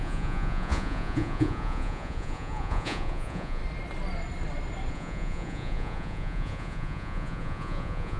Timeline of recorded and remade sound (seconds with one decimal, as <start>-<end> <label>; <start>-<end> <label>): 0.0-3.6 remade; 3.6-4.9 recorded; 4.9-8.2 remade